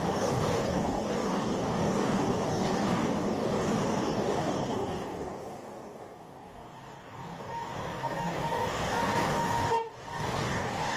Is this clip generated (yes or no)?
yes